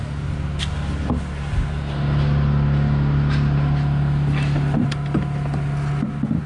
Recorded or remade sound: recorded